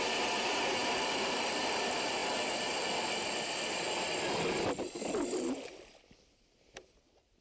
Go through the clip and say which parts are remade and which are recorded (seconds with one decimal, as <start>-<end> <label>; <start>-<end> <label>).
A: 0.0-7.4 remade